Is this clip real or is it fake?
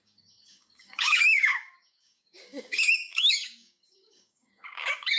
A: fake